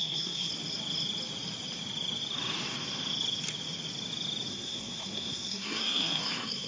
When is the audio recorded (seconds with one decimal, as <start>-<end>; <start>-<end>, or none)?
0.5-4.5